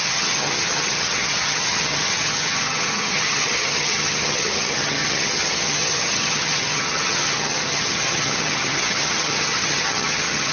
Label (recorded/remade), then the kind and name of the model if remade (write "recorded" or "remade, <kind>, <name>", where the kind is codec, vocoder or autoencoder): remade, vocoder, HiFi-GAN